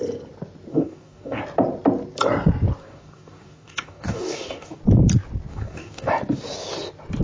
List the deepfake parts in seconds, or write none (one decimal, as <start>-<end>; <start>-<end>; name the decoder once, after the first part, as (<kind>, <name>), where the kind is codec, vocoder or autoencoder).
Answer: 0.7-1.4 (codec, DAC); 2.8-4.8; 5.5-6.1